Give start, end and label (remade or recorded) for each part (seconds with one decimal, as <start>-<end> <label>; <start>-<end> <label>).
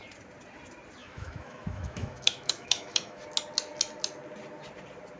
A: 0.0-1.0 recorded; 1.0-3.2 remade; 3.2-5.2 recorded